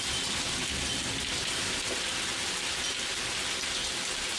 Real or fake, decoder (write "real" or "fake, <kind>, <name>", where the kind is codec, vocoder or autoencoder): real